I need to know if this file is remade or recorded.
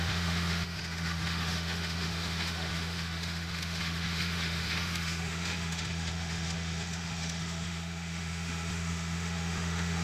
remade